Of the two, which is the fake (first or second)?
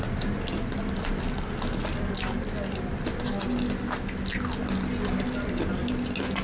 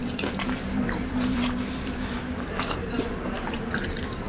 second